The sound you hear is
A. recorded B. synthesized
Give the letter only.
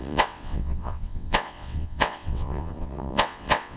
B